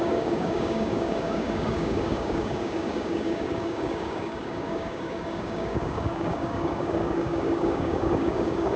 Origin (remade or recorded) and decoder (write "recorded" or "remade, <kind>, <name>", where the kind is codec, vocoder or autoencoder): remade, codec, DAC